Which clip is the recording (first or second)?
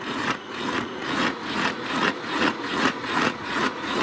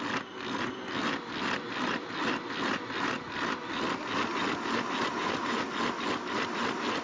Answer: second